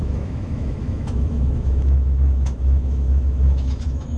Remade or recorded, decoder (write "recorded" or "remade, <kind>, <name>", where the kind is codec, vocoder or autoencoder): remade, autoencoder, DAC-VAE